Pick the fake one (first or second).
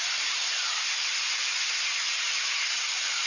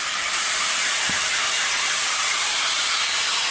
second